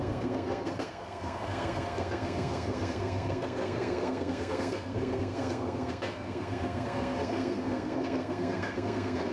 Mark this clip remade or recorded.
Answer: remade